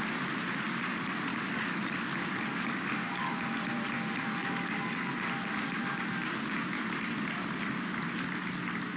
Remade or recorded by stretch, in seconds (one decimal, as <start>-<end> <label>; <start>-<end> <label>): 0.0-1.3 recorded; 1.3-3.4 remade; 3.4-4.4 recorded; 4.4-5.1 remade; 5.1-9.0 recorded